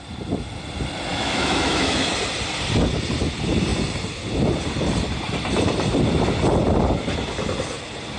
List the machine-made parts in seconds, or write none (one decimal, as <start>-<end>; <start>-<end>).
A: 1.1-2.1